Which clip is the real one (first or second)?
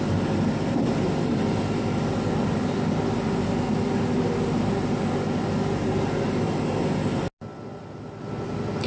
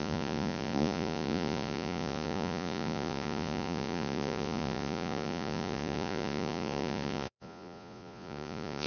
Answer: first